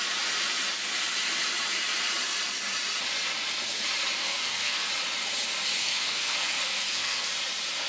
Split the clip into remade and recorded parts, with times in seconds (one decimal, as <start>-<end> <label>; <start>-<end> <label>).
0.0-4.2 recorded; 4.2-4.9 remade; 4.9-5.8 recorded; 5.8-7.3 remade; 7.3-7.9 recorded